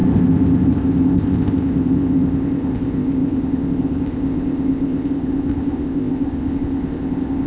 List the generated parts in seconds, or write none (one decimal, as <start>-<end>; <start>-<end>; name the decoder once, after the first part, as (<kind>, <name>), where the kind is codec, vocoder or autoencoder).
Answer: 0.0-7.5 (codec, ZipCodec)